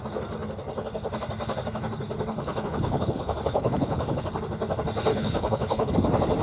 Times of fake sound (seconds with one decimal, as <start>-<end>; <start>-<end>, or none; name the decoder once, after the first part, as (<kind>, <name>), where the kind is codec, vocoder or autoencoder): 2.3-4.2 (codec, HILCodec); 5.1-5.9